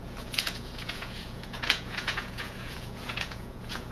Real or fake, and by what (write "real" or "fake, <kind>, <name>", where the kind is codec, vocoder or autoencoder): fake, vocoder, Vocos